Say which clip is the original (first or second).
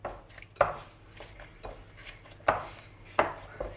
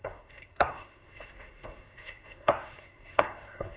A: first